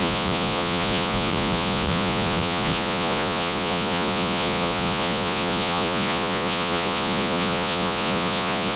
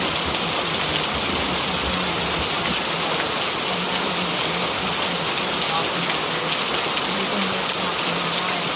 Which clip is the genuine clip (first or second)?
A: second